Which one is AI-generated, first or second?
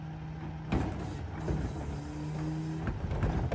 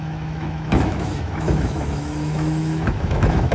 second